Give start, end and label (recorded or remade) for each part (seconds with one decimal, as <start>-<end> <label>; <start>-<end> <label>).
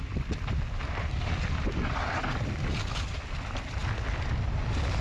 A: 0.0-5.0 recorded